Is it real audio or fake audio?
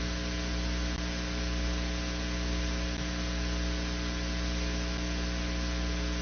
real